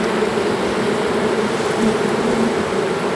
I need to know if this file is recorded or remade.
recorded